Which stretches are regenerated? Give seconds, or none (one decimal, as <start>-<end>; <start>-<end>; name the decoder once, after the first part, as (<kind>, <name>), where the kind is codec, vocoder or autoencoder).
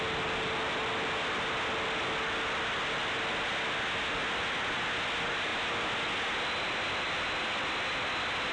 none